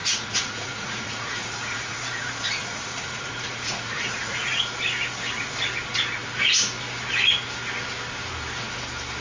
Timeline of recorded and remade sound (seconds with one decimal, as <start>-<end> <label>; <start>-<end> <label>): 0.0-4.6 remade; 4.6-9.2 recorded